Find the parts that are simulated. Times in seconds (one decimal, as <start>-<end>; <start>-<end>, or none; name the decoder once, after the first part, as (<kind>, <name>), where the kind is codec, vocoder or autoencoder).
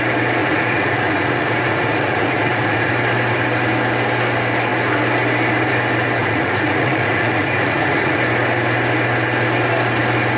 0.4-2.9 (vocoder, Vocos); 6.2-8.2